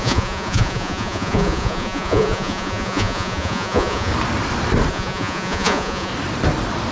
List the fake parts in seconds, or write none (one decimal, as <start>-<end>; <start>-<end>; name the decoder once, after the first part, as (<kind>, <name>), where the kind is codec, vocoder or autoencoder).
0.0-4.1 (vocoder, Vocos); 4.9-6.1